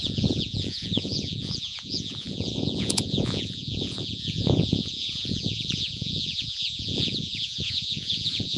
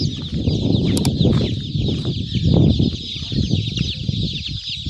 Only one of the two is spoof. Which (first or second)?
first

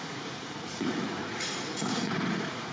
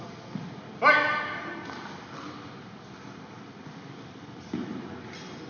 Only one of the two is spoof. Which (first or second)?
first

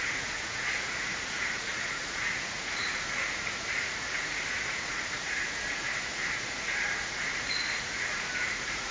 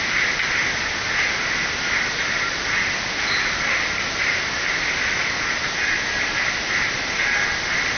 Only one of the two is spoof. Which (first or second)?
first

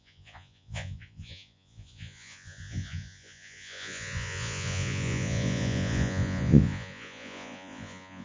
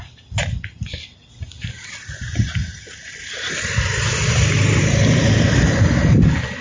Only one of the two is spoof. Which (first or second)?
first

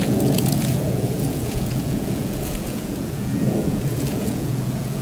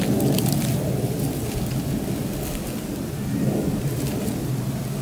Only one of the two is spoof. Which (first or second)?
first